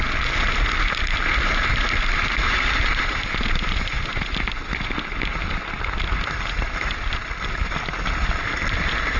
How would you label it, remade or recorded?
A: recorded